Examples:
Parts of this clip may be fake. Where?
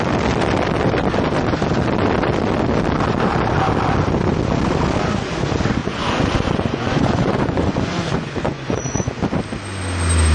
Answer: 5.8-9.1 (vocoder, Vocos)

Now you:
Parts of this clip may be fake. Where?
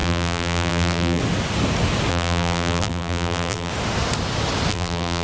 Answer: 0.0-1.2 (vocoder, BigVGAN v2); 2.1-3.7; 4.7-5.2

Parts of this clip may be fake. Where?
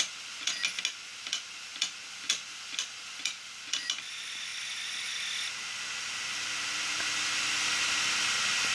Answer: none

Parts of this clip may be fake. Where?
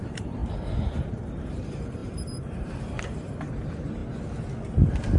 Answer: 0.0-4.0 (vocoder, BigVGAN v2)